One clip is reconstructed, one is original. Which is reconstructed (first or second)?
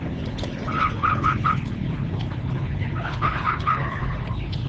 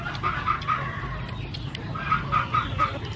first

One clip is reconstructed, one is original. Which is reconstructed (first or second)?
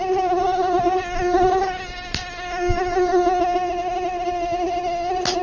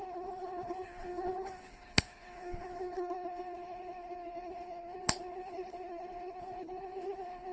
second